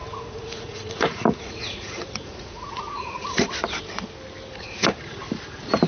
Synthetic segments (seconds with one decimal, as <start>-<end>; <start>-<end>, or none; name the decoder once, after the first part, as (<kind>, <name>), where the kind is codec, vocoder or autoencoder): 0.0-3.5 (vocoder, Vocos); 4.5-5.2